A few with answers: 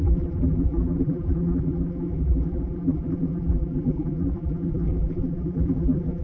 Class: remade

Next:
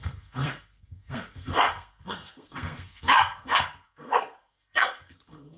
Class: remade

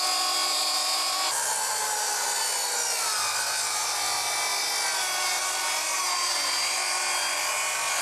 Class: recorded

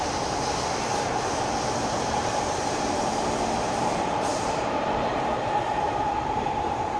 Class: remade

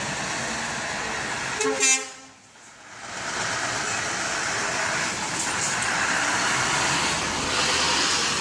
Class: recorded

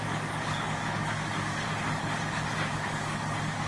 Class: remade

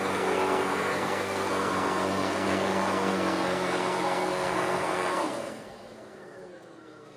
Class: remade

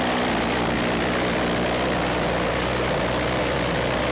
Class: recorded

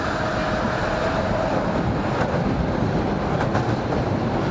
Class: recorded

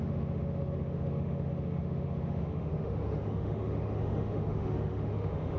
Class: remade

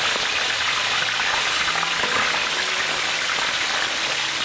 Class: recorded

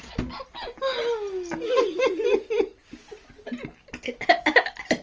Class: recorded